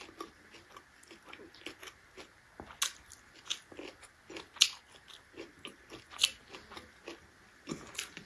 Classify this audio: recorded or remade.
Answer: recorded